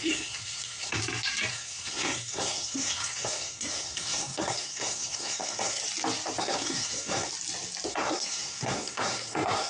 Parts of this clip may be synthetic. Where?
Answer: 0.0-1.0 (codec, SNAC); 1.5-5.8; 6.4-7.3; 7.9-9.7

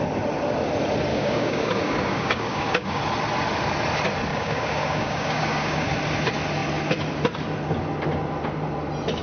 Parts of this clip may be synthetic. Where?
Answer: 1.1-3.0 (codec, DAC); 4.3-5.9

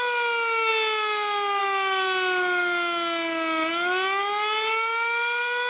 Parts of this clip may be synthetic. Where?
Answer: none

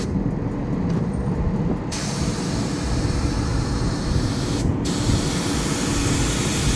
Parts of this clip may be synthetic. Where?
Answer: none

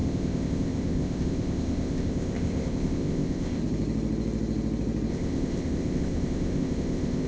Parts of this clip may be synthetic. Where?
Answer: 0.0-3.6 (codec, ZipCodec); 5.1-7.3

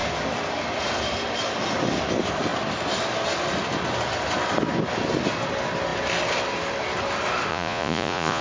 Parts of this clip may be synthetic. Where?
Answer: 7.5-8.4 (vocoder, Vocos)

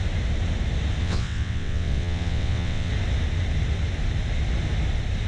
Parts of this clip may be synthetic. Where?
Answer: 1.0-2.9 (vocoder, WaveNeXt)